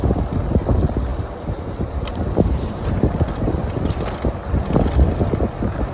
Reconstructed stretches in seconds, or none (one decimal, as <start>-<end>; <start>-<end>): 1.1-3.1